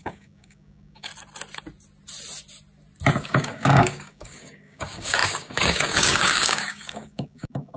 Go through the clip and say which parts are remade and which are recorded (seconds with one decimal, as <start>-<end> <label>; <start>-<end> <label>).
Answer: 0.0-1.1 remade; 1.1-3.1 recorded; 3.1-7.8 remade